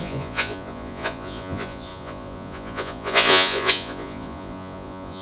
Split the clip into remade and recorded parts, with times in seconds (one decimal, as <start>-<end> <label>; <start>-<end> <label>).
0.0-5.2 remade

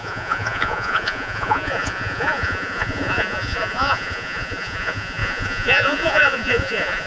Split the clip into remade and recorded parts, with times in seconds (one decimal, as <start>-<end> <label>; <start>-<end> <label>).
0.0-7.1 remade

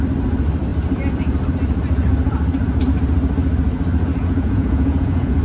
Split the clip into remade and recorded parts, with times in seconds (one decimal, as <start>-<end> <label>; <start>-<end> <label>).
0.0-4.2 recorded; 4.2-5.4 remade

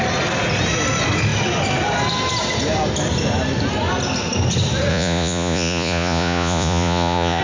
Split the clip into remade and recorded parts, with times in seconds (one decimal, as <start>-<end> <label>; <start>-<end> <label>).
0.0-4.9 recorded; 4.9-7.4 remade

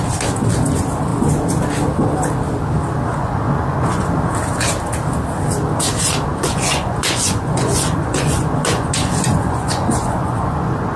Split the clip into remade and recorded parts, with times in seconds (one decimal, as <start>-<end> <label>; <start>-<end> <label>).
0.0-3.1 recorded; 3.1-4.0 remade; 4.0-6.3 recorded; 6.3-11.0 remade

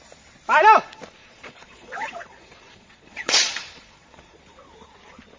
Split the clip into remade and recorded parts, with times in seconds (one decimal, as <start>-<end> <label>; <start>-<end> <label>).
0.0-1.2 recorded; 1.2-4.4 remade; 4.4-5.4 recorded

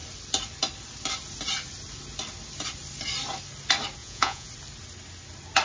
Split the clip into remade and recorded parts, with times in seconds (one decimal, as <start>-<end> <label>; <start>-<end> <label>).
0.0-4.0 recorded; 4.0-4.5 remade; 4.5-5.6 recorded

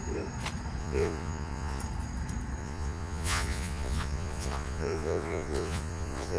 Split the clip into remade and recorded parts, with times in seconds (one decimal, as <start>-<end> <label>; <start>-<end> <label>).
0.0-0.8 recorded; 0.8-1.8 remade; 1.8-2.6 recorded; 2.6-6.4 remade